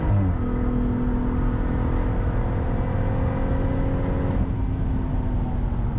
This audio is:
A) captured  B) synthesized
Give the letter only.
A